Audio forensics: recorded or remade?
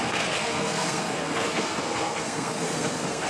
remade